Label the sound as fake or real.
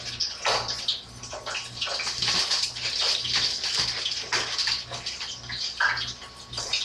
real